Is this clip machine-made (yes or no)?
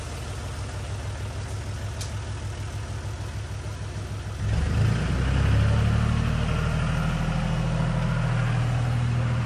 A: no